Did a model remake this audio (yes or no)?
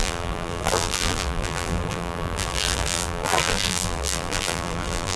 yes